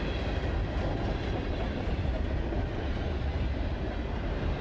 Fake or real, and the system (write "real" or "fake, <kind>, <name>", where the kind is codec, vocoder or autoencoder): real